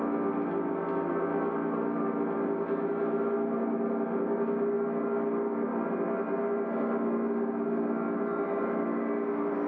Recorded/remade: recorded